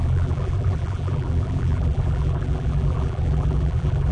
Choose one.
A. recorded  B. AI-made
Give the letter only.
B